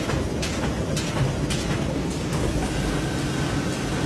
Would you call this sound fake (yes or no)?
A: no